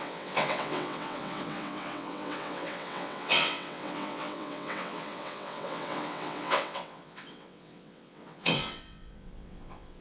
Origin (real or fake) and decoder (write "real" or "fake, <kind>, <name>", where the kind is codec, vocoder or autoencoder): fake, vocoder, WaveNeXt